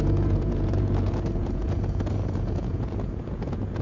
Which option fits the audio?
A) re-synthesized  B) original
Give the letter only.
A